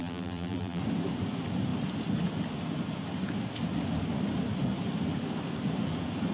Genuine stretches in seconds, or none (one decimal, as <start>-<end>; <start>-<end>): 0.8-6.3